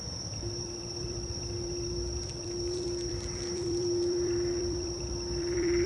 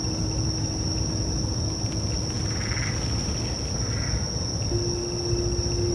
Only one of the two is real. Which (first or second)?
second